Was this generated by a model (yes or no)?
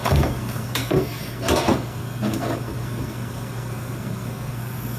yes